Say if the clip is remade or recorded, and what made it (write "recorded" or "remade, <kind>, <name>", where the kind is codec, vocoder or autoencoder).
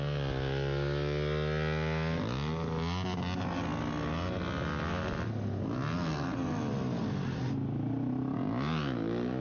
recorded